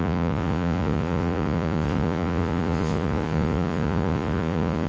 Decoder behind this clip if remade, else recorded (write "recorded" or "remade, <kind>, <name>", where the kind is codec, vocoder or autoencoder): remade, vocoder, Vocos